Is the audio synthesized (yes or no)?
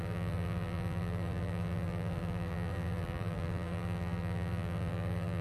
yes